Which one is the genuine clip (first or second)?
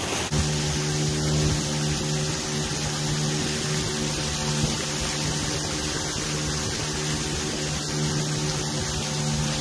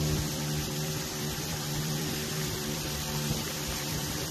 first